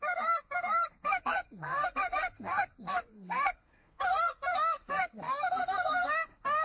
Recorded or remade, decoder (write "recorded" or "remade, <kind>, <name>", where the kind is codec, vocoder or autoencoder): remade, codec, SNAC